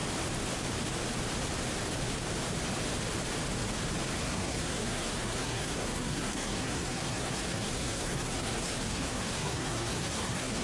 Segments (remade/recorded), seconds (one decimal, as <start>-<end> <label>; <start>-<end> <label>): 0.0-4.2 recorded; 4.2-10.6 remade